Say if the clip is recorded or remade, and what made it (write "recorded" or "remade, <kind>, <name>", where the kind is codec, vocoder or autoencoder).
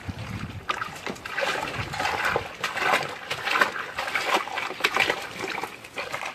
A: recorded